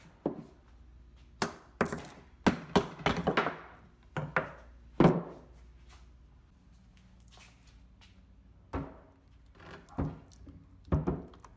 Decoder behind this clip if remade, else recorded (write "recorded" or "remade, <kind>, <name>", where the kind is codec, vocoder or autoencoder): recorded